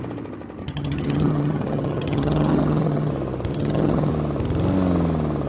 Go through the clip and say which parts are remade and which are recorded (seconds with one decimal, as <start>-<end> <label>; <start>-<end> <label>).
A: 0.0-0.6 recorded; 0.6-3.1 remade; 3.1-3.5 recorded; 3.5-4.1 remade; 4.1-5.5 recorded